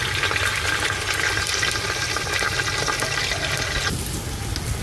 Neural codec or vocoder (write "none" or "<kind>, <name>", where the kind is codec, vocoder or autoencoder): none